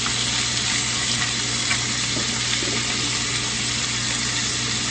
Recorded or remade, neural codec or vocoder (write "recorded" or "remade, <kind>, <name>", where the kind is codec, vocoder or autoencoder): recorded